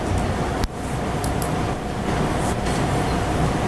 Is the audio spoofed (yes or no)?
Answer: no